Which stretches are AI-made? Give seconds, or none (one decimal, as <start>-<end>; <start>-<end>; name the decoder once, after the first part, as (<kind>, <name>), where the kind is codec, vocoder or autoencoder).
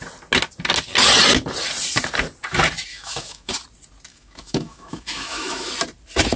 2.9-3.5 (autoencoder, DAC-VAE); 4.1-5.7